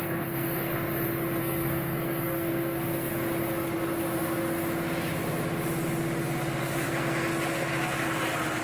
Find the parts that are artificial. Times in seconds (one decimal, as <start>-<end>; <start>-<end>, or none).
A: 0.0-0.7; 1.4-3.1; 6.6-7.3